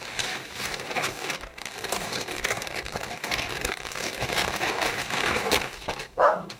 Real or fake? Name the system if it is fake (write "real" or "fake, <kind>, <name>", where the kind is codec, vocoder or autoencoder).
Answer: fake, codec, DAC